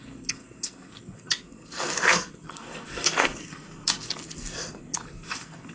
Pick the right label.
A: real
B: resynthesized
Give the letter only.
B